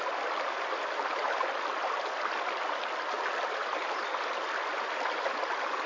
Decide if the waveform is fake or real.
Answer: real